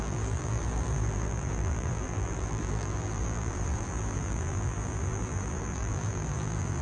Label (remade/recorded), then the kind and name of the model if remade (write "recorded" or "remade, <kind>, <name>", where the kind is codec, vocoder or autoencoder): remade, vocoder, BigVGAN v2